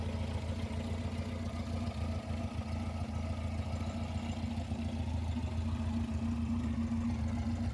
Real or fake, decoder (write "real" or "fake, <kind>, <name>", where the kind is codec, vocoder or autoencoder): real